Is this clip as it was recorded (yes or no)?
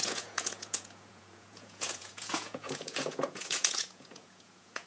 no